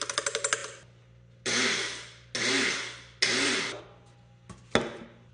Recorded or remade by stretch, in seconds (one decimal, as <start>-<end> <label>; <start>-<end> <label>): 0.0-5.3 recorded